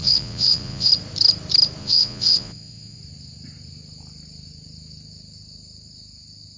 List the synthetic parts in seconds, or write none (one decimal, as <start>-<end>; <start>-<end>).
0.0-0.9; 1.8-3.0